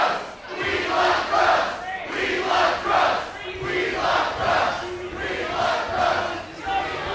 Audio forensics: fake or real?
real